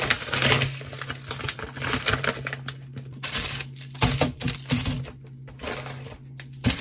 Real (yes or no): yes